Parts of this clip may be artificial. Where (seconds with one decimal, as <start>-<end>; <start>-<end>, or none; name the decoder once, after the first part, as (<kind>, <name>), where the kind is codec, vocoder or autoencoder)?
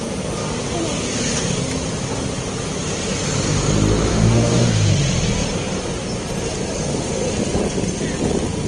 4.1-4.7 (autoencoder, DAC-VAE)